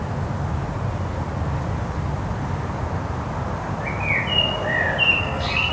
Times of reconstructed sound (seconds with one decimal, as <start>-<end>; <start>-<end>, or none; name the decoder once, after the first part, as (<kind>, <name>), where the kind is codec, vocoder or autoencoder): 5.2-5.7 (codec, SNAC)